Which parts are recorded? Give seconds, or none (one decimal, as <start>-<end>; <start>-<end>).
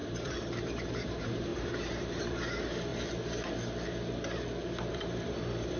2.9-4.9